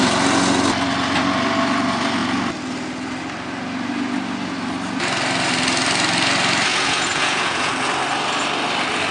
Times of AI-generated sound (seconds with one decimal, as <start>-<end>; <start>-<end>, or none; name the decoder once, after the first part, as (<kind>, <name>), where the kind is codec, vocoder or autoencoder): 6.7-7.7 (vocoder, Vocos)